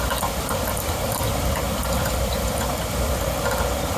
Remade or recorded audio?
recorded